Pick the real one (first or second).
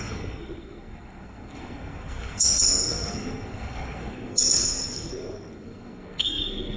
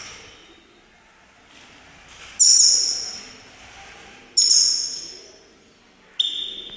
second